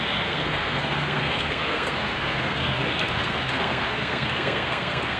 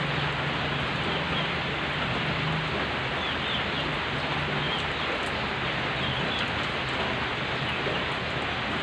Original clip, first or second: second